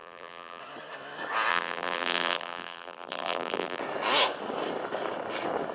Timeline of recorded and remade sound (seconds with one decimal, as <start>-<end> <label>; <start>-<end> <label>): 0.0-0.6 remade; 0.6-1.5 recorded; 1.5-3.8 remade; 3.8-5.7 recorded